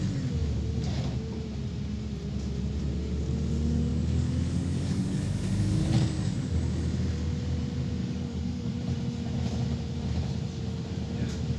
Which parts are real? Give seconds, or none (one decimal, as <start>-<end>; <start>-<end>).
0.0-3.9; 6.6-8.0; 8.7-11.6